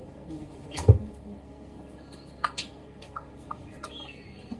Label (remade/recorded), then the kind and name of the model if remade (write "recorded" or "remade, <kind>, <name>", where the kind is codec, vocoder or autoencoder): remade, codec, SNAC